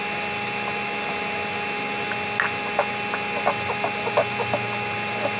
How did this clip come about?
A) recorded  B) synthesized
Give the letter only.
A